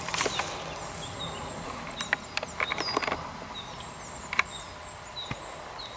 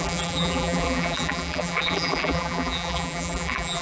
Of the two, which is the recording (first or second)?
first